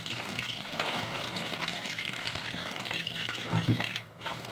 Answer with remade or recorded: remade